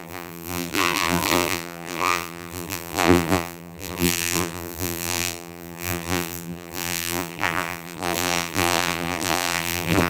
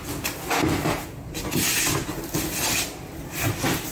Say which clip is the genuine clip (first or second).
second